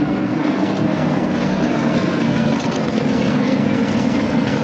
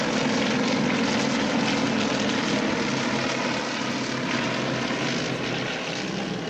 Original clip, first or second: second